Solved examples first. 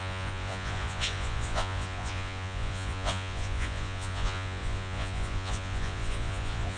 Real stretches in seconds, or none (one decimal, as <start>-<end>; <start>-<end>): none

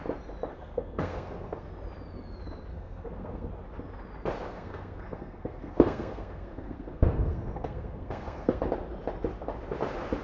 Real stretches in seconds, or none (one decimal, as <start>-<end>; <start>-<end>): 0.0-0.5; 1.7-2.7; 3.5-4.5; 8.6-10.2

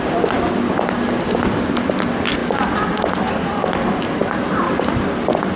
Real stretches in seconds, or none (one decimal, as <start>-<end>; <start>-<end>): 0.0-5.6

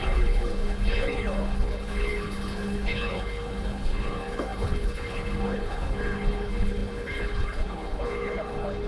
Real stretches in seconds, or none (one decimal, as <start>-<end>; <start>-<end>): none

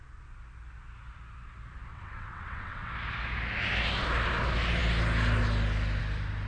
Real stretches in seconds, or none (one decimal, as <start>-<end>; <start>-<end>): 0.0-1.9; 2.9-6.5

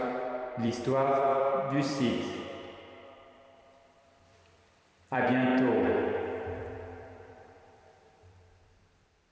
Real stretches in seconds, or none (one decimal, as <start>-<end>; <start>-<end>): none

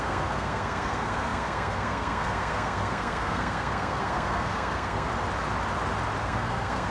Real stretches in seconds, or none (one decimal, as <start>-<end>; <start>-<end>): 5.1-6.2

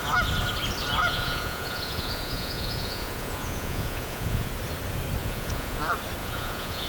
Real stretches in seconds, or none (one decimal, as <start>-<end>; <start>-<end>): 0.0-1.0; 4.5-5.2; 5.8-6.2